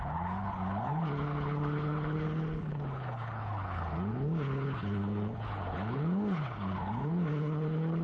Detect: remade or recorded remade